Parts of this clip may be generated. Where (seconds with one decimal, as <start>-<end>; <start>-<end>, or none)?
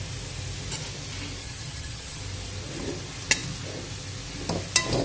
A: 1.4-2.2